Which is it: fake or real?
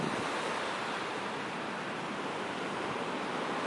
real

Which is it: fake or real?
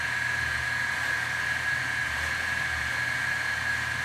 real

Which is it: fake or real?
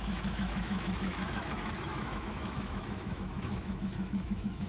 fake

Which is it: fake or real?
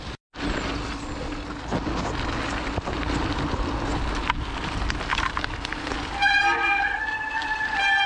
real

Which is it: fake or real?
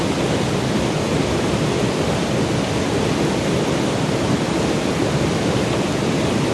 real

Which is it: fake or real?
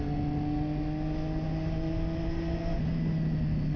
real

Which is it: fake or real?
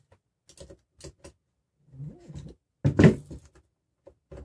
real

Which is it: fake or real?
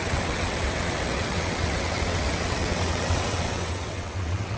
fake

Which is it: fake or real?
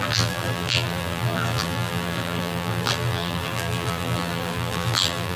fake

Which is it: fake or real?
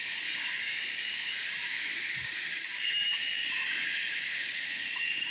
fake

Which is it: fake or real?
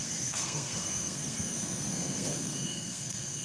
fake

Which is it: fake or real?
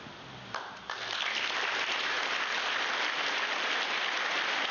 real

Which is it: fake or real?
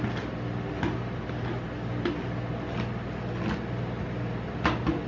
real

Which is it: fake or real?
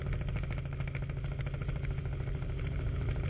real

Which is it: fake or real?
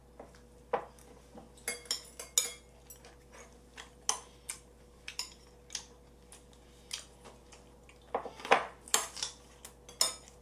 real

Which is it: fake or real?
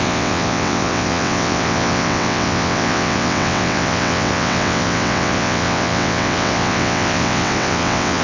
fake